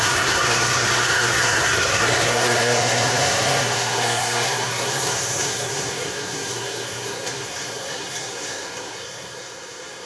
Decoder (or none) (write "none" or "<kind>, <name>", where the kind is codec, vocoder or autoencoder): codec, SNAC